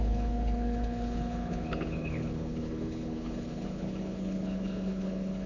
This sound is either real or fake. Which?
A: fake